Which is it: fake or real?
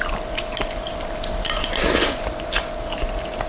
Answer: real